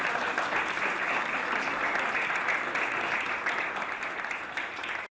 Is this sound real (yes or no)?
yes